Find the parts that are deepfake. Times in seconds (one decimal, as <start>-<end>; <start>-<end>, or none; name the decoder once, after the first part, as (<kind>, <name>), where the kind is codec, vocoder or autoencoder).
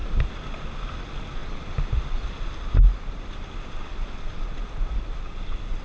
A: 0.0-0.5 (vocoder, BigVGAN v2)